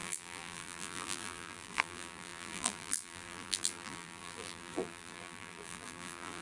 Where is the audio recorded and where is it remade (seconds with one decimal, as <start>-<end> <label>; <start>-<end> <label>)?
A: 0.0-6.4 remade